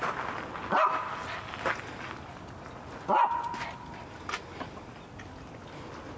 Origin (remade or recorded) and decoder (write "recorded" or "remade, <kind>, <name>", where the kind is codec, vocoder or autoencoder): recorded